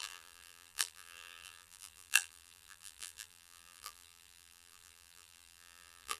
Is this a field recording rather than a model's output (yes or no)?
no